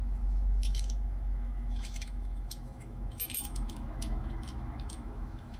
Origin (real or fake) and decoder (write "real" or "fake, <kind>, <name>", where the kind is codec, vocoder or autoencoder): fake, autoencoder, DAC-VAE